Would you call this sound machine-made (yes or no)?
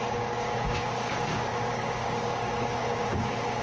yes